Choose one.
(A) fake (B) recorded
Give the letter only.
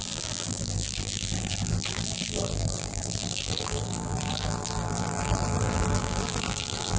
A